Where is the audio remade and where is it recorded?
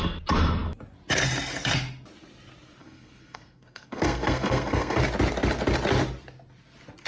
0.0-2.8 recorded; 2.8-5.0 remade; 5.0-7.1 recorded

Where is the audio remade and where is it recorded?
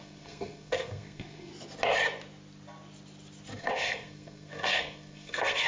0.0-1.5 remade; 1.5-3.6 recorded; 3.6-5.7 remade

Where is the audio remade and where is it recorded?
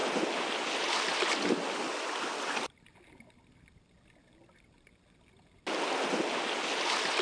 0.0-7.2 recorded